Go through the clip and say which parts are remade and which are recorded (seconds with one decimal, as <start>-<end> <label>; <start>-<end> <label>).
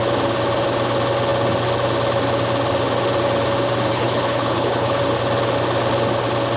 0.0-3.9 recorded; 3.9-5.0 remade; 5.0-6.6 recorded